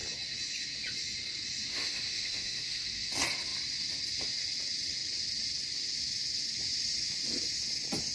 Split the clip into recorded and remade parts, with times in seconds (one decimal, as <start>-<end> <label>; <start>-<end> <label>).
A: 0.0-1.7 recorded; 1.7-3.1 remade; 3.1-8.1 recorded